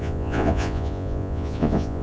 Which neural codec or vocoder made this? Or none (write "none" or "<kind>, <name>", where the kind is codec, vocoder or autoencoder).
vocoder, Vocos